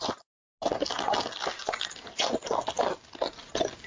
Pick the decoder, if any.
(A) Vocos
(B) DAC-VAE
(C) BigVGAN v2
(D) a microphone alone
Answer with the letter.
D